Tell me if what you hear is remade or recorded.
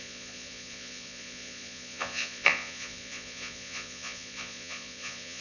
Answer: remade